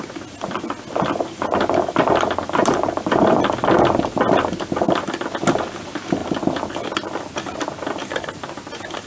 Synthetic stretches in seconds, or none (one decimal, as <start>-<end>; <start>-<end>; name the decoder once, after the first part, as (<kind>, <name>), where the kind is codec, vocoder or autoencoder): none